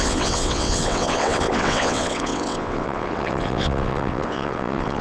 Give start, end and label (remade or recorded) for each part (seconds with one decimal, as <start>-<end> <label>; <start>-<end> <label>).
0.0-5.0 remade